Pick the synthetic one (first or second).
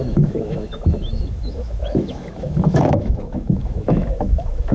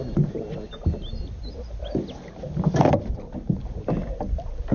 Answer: first